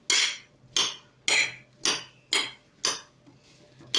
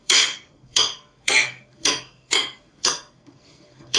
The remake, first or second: second